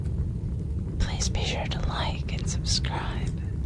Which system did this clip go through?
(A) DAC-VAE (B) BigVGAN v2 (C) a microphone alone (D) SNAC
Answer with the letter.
C